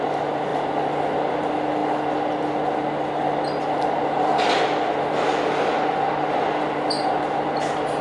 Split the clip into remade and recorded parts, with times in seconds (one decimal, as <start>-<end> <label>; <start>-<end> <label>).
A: 0.0-8.0 recorded